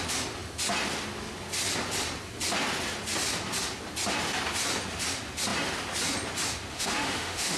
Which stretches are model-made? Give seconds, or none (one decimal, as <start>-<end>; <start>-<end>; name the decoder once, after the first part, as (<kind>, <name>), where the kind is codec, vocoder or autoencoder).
6.7-7.6 (autoencoder, DAC-VAE)